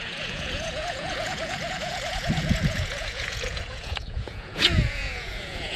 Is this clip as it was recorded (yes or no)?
no